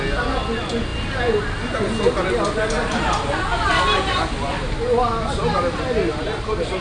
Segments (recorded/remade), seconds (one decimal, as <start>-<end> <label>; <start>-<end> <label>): 0.0-6.8 recorded